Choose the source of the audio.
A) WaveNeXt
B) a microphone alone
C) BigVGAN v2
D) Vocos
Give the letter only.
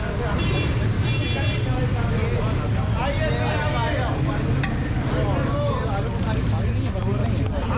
B